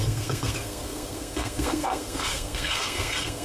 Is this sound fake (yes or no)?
yes